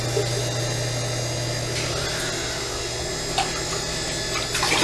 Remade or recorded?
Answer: recorded